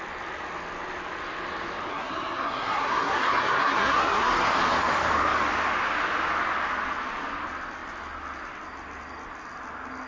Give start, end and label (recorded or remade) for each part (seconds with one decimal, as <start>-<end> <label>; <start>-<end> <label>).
0.0-1.9 recorded; 1.9-4.5 remade; 4.5-10.1 recorded